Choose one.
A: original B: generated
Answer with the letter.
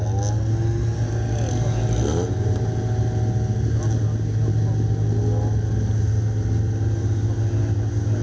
A